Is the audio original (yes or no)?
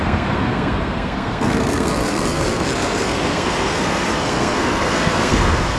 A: no